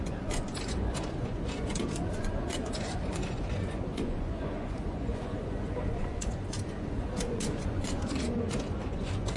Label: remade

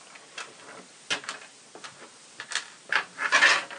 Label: recorded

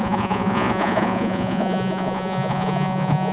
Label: remade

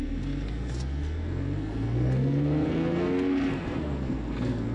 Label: remade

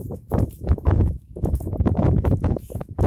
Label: remade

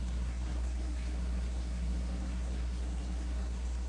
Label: remade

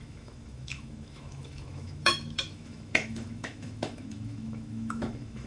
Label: remade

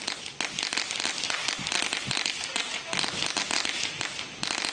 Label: recorded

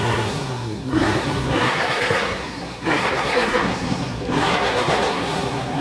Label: remade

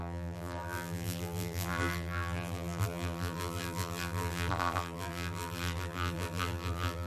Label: remade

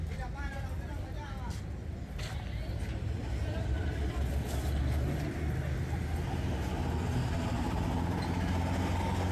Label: recorded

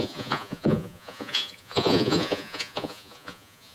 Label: remade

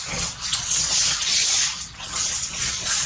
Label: remade